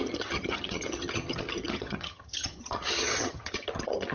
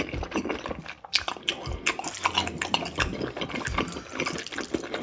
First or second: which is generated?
first